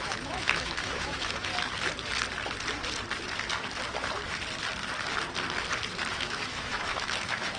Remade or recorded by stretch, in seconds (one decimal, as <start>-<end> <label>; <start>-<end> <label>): 0.0-1.5 remade; 1.5-6.1 recorded; 6.1-7.6 remade